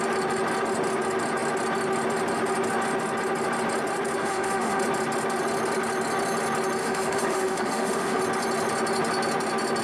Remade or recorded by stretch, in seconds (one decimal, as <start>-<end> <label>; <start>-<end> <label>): 0.0-4.2 recorded; 4.2-4.8 remade; 4.8-6.8 recorded; 6.8-8.2 remade; 8.2-9.8 recorded